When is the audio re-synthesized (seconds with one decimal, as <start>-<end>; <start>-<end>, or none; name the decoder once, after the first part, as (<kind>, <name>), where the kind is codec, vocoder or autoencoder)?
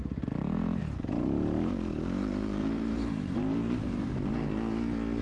2.6-4.1 (vocoder, BigVGAN v2)